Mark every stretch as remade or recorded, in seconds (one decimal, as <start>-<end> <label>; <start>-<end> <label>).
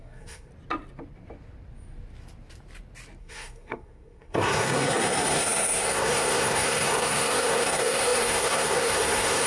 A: 0.0-0.5 remade; 0.5-3.2 recorded; 3.2-9.5 remade